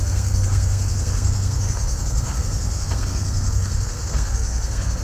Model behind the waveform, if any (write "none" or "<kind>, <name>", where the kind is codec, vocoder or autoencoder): codec, SNAC